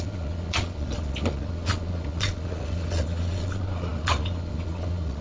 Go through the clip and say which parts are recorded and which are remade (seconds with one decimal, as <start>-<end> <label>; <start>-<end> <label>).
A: 0.0-5.2 remade